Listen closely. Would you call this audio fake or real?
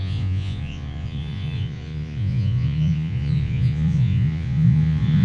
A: fake